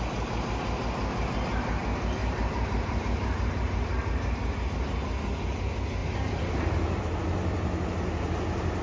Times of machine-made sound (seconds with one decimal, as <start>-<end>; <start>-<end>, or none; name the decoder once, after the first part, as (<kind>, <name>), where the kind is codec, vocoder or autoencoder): 2.2-4.7 (vocoder, BigVGAN v2); 6.0-7.0